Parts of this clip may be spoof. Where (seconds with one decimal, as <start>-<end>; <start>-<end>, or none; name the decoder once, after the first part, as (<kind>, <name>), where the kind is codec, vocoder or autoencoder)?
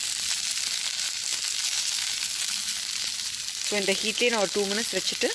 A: none